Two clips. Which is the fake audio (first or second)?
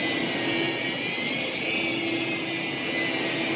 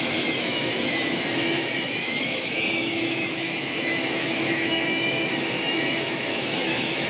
second